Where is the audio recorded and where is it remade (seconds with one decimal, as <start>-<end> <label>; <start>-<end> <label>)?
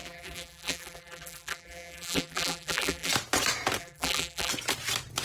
0.0-3.1 remade; 3.1-3.8 recorded; 3.8-4.5 remade; 4.5-5.2 recorded